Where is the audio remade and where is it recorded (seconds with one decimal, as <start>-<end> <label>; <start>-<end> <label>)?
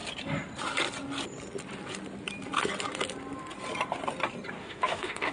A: 0.0-4.6 recorded; 4.6-5.3 remade